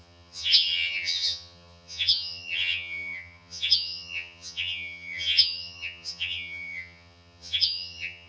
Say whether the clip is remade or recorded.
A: remade